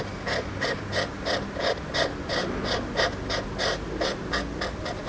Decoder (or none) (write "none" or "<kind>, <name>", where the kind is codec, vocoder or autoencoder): none